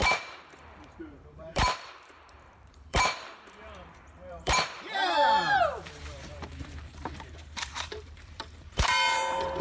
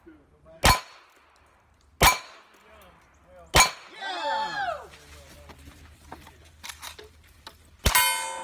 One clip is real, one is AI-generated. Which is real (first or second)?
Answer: second